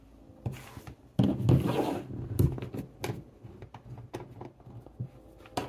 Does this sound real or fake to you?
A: real